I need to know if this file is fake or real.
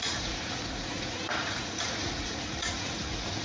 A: fake